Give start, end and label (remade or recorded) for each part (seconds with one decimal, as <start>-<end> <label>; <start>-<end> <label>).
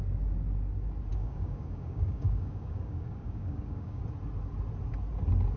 0.0-1.1 recorded; 1.1-4.0 remade; 4.0-5.6 recorded